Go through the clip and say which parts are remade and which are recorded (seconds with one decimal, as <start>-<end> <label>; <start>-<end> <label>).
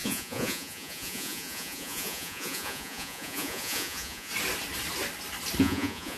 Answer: 0.0-4.3 remade; 4.3-5.6 recorded; 5.6-6.2 remade